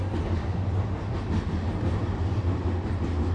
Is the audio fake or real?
real